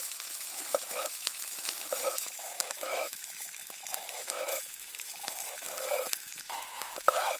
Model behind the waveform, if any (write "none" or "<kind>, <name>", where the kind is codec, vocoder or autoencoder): autoencoder, DAC-VAE